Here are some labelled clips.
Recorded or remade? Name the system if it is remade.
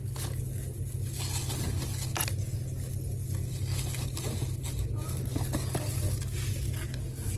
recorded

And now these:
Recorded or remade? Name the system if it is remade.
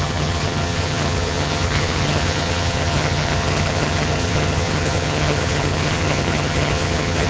remade, vocoder, HiFi-GAN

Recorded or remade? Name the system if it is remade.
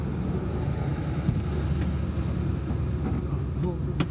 recorded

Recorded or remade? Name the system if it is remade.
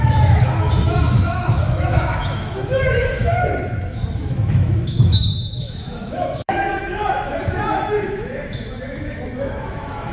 remade, autoencoder, DAC-VAE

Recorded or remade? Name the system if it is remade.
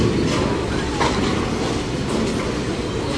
recorded